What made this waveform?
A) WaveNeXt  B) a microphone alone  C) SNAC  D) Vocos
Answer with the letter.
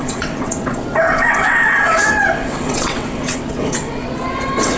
A